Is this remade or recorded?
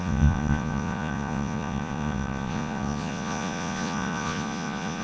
remade